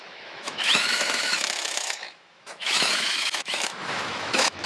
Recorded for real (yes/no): no